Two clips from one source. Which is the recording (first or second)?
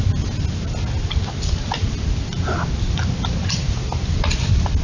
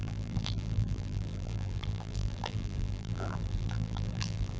first